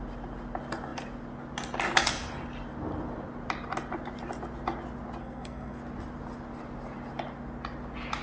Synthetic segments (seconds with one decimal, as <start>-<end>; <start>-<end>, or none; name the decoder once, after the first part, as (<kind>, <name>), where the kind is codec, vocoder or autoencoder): 5.2-5.8 (codec, SNAC)